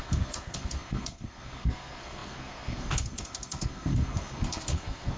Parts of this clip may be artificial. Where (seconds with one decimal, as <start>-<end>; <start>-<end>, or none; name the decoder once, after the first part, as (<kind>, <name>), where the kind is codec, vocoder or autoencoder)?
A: 0.0-5.2 (codec, SNAC)